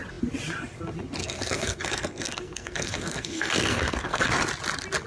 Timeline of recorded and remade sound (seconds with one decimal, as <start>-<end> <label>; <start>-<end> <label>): 0.0-1.2 recorded; 1.2-4.3 remade; 4.3-5.1 recorded